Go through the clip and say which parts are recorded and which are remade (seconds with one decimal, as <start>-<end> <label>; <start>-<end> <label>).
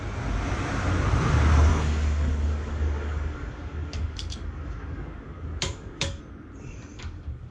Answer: 0.0-1.7 recorded; 1.7-6.2 remade; 6.2-6.9 recorded; 6.9-7.5 remade